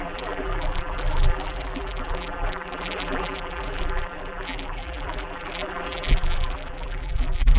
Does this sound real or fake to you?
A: fake